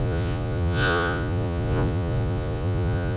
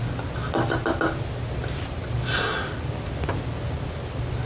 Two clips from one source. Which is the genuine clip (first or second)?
second